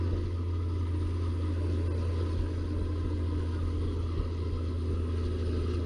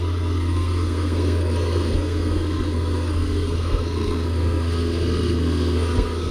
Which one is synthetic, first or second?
second